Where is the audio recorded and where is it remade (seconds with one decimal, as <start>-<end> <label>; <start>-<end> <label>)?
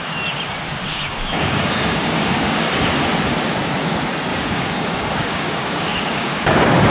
0.0-0.9 recorded; 0.9-2.8 remade; 2.8-4.3 recorded; 4.3-6.9 remade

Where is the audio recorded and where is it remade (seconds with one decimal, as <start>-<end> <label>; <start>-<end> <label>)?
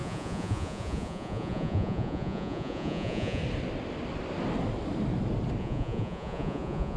0.0-3.4 remade; 3.4-5.6 recorded; 5.6-7.0 remade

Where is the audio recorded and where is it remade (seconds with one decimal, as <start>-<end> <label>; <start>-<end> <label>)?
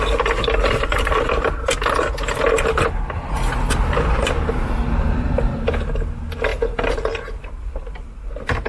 0.0-8.7 recorded